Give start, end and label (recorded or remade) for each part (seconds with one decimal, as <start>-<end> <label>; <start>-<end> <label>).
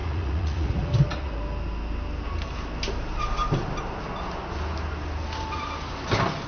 0.0-1.4 remade; 1.4-6.5 recorded